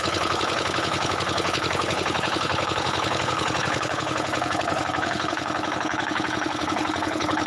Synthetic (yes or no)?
yes